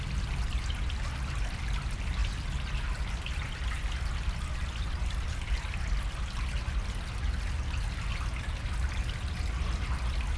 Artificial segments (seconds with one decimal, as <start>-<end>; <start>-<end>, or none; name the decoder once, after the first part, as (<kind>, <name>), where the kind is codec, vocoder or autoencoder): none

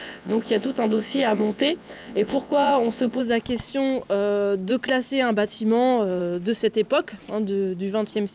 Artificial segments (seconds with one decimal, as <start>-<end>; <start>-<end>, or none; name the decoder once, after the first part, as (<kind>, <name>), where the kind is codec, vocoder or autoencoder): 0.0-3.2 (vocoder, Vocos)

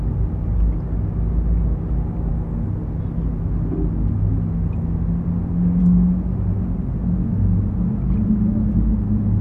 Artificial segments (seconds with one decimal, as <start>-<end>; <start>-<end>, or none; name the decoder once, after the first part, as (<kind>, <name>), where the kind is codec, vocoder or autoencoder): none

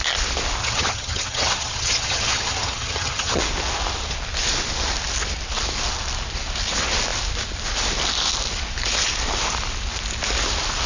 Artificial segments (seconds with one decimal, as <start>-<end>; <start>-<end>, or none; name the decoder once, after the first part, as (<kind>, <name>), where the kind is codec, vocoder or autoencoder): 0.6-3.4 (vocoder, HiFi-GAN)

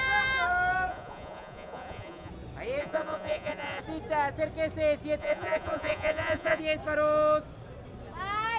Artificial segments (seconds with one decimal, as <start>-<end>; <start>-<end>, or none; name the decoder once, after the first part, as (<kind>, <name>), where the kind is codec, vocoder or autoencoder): 0.9-2.3 (vocoder, Vocos); 2.8-3.8; 5.2-6.6